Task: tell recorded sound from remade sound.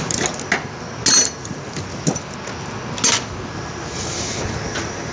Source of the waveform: recorded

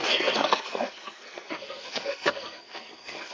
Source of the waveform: remade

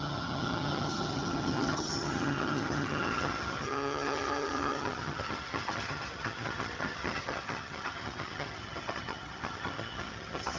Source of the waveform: remade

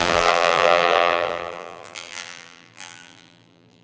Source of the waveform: remade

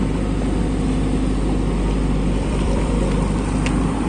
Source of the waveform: remade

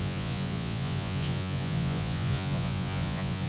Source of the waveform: remade